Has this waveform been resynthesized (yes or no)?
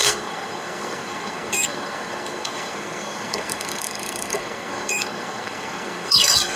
yes